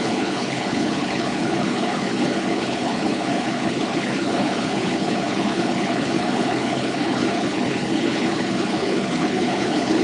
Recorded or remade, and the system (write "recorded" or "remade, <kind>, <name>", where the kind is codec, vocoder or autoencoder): remade, codec, HILCodec